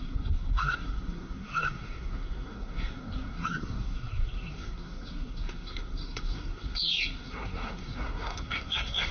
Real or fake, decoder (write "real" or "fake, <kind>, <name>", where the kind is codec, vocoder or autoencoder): fake, codec, SNAC